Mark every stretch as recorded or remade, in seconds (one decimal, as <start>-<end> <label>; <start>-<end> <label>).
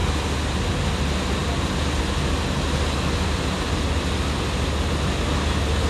0.0-5.9 recorded